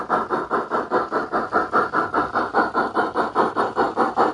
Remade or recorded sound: recorded